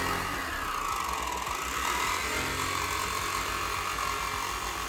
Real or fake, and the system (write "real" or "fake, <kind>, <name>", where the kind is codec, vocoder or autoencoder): real